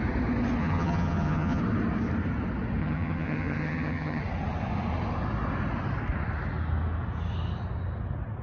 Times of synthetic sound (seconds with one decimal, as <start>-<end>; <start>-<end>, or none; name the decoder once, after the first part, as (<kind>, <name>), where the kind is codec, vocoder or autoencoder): 0.6-1.6 (vocoder, HiFi-GAN); 2.8-4.2